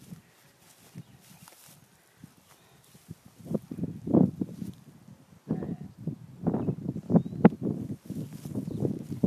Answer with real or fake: real